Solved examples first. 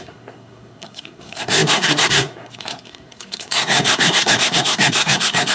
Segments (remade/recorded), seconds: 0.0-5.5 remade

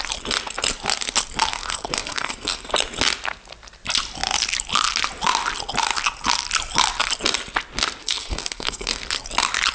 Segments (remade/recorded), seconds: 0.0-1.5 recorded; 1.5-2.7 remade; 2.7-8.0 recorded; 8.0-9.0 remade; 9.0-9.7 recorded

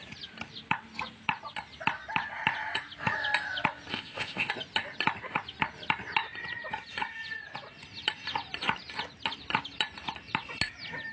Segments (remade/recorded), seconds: 0.0-3.9 recorded; 3.9-4.5 remade; 4.5-11.1 recorded

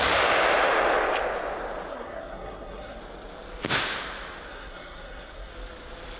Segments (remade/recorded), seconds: 0.0-1.9 recorded; 1.9-3.0 remade; 3.0-4.5 recorded; 4.5-5.5 remade; 5.5-6.2 recorded